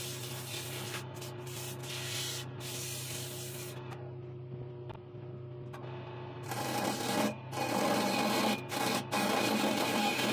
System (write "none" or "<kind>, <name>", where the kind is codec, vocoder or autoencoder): none